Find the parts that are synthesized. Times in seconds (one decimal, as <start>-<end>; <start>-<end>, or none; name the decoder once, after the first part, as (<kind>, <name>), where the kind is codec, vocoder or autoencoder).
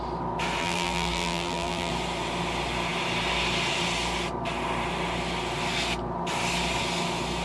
0.6-1.9 (vocoder, BigVGAN v2)